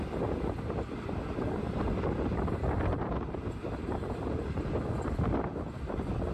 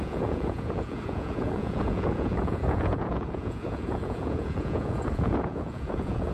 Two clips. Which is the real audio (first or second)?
first